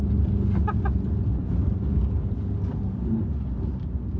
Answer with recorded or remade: recorded